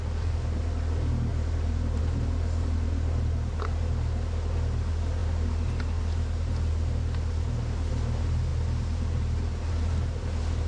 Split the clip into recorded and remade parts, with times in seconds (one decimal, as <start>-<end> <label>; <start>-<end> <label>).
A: 0.0-10.7 recorded

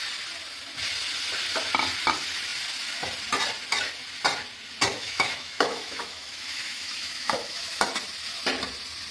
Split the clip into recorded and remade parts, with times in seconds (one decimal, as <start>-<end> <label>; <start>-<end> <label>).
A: 0.0-4.9 recorded; 4.9-7.8 remade; 7.8-9.1 recorded

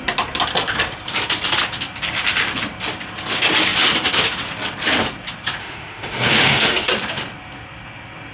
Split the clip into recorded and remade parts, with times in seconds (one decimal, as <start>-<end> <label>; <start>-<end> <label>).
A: 0.0-5.6 recorded; 5.6-6.9 remade; 6.9-8.3 recorded

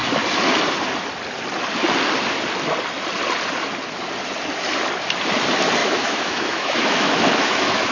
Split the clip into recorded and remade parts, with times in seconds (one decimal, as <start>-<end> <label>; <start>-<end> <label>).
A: 0.0-5.8 recorded; 5.8-7.9 remade

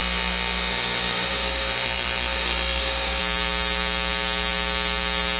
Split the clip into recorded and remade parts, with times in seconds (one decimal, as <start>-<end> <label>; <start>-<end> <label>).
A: 0.0-3.2 remade; 3.2-5.4 recorded

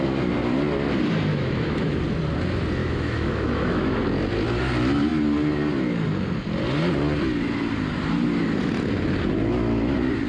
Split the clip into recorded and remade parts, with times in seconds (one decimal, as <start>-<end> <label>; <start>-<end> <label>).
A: 0.0-1.3 recorded; 1.3-2.0 remade; 2.0-2.8 recorded; 2.8-4.0 remade; 4.0-10.3 recorded

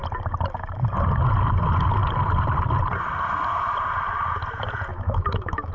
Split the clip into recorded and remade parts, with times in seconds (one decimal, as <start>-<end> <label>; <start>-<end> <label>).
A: 0.0-4.9 recorded; 4.9-5.7 remade

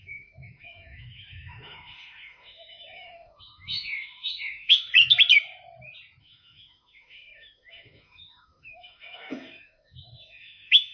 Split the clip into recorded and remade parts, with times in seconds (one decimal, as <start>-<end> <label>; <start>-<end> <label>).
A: 0.0-4.9 remade; 4.9-6.2 recorded; 6.2-10.9 remade